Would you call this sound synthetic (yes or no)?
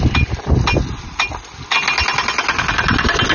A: no